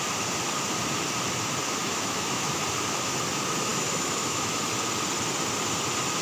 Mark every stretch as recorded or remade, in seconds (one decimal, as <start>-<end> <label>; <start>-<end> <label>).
0.0-1.8 recorded; 1.8-2.6 remade; 2.6-3.7 recorded; 3.7-4.5 remade; 4.5-6.2 recorded